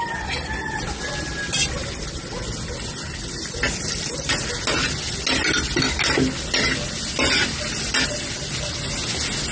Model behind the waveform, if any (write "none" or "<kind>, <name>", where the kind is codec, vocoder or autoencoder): none